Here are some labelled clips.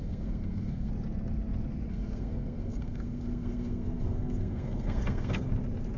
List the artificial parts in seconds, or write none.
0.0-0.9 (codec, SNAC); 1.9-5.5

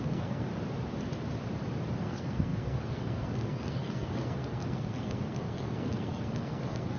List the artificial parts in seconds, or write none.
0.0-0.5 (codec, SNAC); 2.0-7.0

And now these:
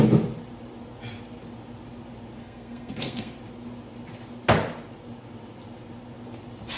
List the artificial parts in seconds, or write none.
2.4-3.4 (codec, SNAC)

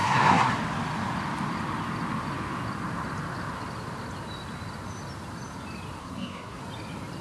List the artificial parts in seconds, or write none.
0.0-0.5 (codec, SNAC); 6.0-6.6